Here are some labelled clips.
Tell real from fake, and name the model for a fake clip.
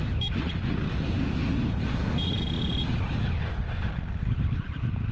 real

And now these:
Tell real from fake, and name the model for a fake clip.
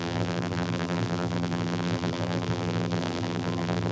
fake, vocoder, BigVGAN v2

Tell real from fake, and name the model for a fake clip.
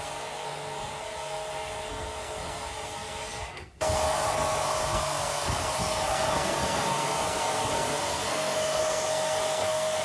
fake, codec, SNAC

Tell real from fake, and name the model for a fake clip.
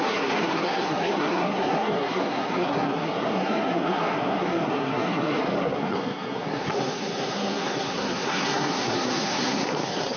fake, codec, SNAC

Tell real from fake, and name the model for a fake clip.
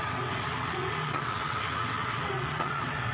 fake, vocoder, WaveNeXt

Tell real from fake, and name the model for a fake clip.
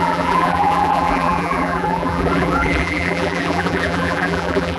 fake, vocoder, BigVGAN v2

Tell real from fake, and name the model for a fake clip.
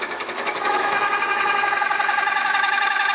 fake, autoencoder, DAC-VAE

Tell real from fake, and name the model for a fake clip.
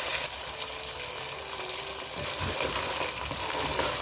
real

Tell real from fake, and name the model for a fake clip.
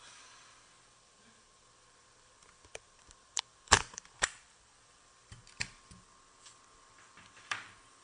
fake, vocoder, BigVGAN v2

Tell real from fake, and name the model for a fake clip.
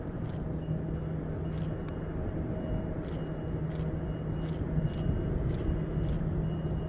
real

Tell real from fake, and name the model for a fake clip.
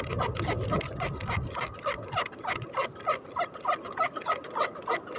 real